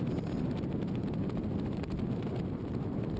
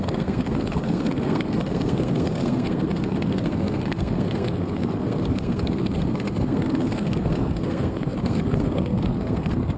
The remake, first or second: second